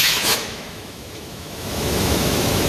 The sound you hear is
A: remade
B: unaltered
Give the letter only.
A